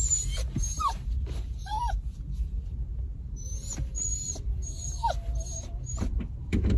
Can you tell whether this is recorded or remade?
remade